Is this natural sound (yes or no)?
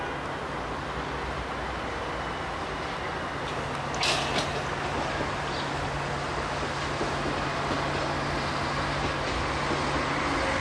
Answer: yes